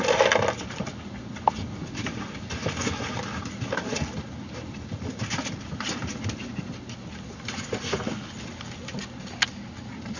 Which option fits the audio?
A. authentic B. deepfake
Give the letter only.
A